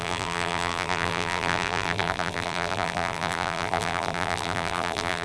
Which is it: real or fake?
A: fake